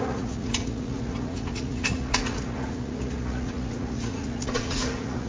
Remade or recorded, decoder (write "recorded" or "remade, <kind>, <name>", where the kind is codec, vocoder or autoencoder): remade, vocoder, Vocos